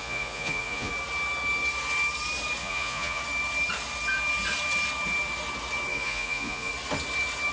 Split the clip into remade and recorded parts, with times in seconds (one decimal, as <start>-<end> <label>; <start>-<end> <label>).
0.0-0.9 remade; 0.9-2.6 recorded; 2.6-3.2 remade; 3.2-5.9 recorded; 5.9-6.7 remade; 6.7-7.5 recorded